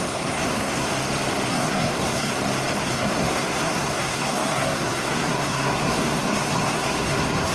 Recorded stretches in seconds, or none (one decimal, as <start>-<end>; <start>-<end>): 0.9-1.5; 2.3-2.8